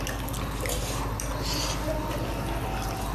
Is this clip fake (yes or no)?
no